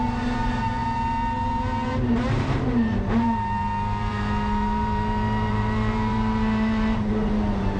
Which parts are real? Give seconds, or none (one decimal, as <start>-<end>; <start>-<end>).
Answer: none